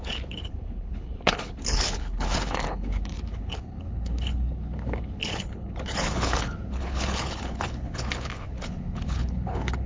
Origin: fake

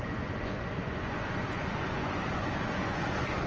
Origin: fake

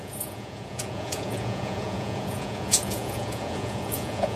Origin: fake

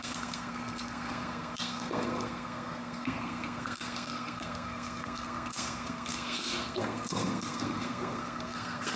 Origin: fake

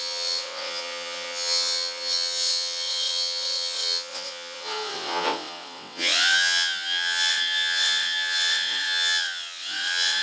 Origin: fake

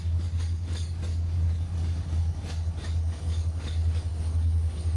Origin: fake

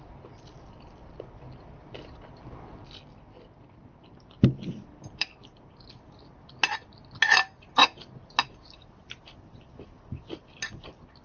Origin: real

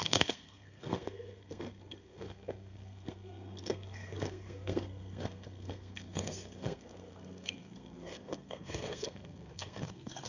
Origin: fake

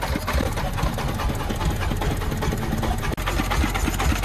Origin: real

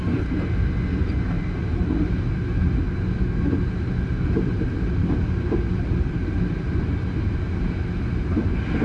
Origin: real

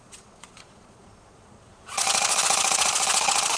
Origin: fake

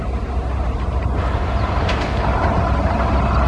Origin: real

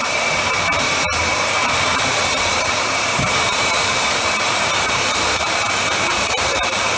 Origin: fake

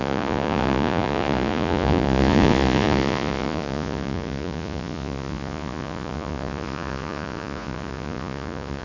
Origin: fake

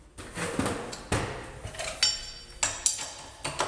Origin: real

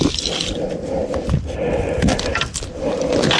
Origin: real